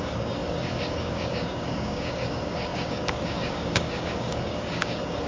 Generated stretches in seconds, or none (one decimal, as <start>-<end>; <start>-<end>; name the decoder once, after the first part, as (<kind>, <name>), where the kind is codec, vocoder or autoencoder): 0.0-5.3 (codec, DAC)